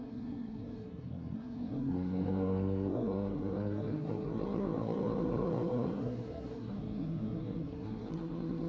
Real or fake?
fake